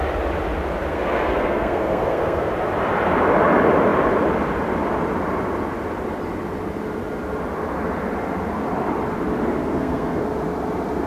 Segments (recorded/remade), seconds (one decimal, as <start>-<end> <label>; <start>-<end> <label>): 0.0-0.9 recorded; 0.9-2.5 remade; 2.5-9.5 recorded; 9.5-10.2 remade; 10.2-11.1 recorded